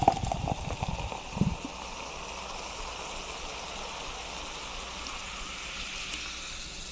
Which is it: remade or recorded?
recorded